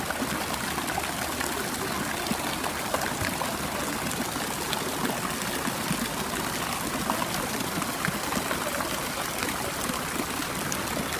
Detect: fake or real real